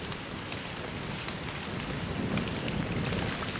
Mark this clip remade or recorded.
remade